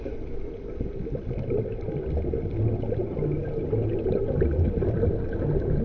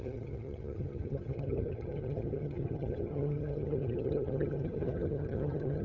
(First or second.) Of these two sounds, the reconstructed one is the second